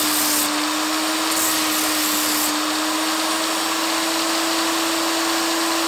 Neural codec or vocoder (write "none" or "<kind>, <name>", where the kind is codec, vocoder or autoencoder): none